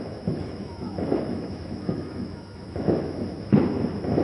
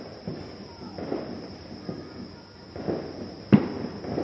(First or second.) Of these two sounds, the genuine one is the second